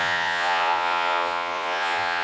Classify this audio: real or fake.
fake